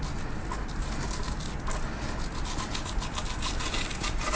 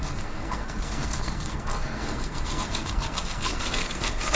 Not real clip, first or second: second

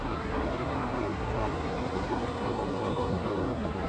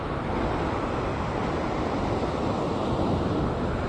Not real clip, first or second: first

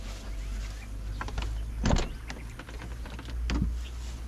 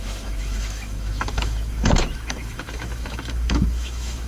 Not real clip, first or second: second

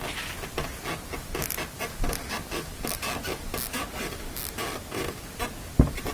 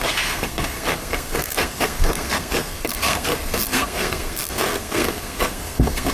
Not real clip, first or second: second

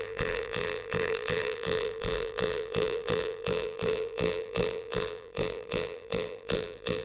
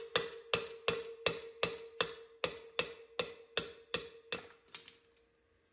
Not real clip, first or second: first